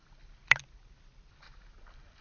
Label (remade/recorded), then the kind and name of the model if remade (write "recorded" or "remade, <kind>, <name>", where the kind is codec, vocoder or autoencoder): recorded